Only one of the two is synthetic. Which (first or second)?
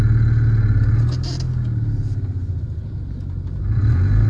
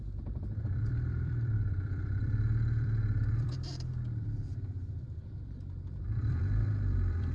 second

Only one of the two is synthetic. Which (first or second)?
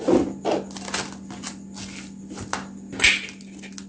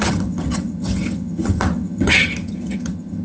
second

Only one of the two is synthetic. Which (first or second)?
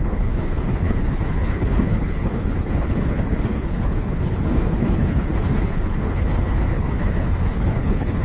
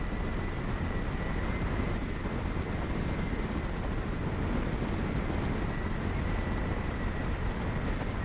first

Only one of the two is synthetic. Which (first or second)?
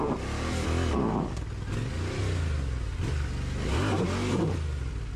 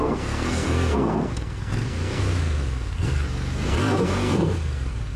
second